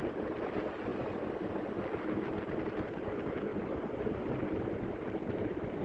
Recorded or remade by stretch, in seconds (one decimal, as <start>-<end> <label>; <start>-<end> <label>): 0.0-0.9 recorded; 0.9-1.7 remade; 1.7-3.5 recorded; 3.5-5.8 remade